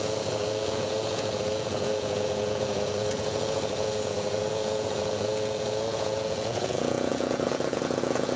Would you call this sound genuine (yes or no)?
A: no